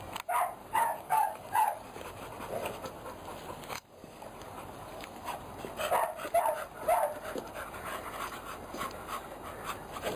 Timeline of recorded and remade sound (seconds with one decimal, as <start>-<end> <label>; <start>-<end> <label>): 0.0-0.6 recorded; 0.6-2.2 remade; 2.2-3.3 recorded; 3.3-5.2 remade; 5.2-10.2 recorded